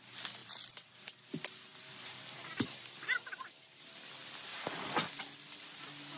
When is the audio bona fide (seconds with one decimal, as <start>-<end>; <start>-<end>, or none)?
0.0-0.4; 0.9-1.7; 3.8-4.5; 5.6-6.2